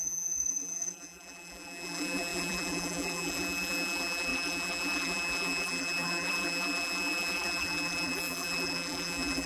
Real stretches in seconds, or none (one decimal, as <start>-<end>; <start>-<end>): none